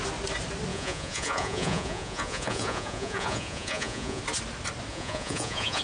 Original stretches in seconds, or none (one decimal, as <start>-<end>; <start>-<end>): 0.0-0.7; 4.2-4.9